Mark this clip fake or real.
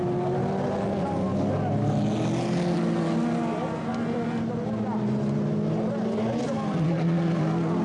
real